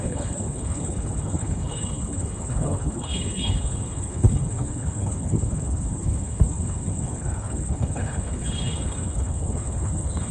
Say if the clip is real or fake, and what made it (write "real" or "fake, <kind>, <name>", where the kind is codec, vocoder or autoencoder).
fake, codec, HILCodec